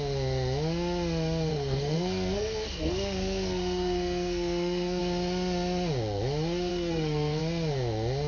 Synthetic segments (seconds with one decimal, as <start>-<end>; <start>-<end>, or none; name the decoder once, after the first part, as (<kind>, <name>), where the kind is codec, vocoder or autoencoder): 1.5-5.0 (codec, SNAC); 6.7-7.4